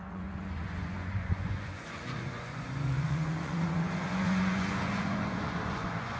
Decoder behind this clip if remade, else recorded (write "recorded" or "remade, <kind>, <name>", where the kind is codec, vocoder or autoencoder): remade, vocoder, Vocos